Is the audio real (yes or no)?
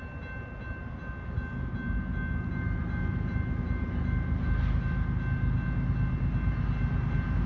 yes